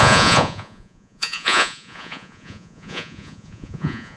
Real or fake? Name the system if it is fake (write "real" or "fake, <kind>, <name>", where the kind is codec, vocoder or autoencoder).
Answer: fake, vocoder, Vocos